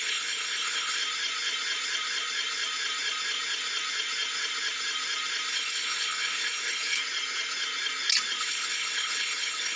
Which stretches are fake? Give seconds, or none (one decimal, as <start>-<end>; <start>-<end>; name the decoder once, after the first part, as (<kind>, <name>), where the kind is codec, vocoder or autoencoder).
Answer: 0.0-1.0 (codec, HILCodec); 5.5-7.0; 8.4-9.8